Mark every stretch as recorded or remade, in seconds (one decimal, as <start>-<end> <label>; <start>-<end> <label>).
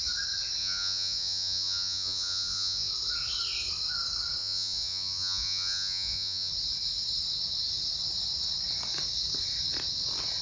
0.0-0.6 recorded; 0.6-2.9 remade; 2.9-4.4 recorded; 4.4-6.5 remade; 6.5-10.4 recorded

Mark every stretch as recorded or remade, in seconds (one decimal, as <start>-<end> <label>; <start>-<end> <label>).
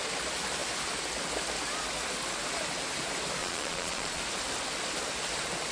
0.0-3.4 recorded; 3.4-4.2 remade; 4.2-5.7 recorded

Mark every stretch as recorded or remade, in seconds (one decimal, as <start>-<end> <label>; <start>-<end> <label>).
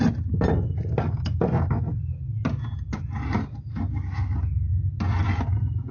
0.0-5.9 recorded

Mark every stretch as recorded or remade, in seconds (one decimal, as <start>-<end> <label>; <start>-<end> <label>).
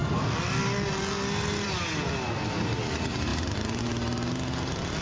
0.0-5.0 recorded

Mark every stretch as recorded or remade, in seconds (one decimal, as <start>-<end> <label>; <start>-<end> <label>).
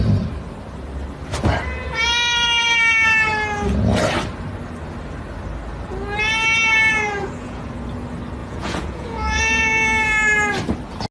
0.0-6.9 recorded; 6.9-7.7 remade; 7.7-8.4 recorded; 8.4-9.4 remade; 9.4-11.1 recorded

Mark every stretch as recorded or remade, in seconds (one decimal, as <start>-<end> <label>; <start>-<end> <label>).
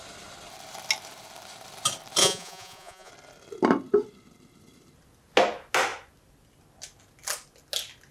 0.0-2.2 recorded; 2.2-3.1 remade; 3.1-8.1 recorded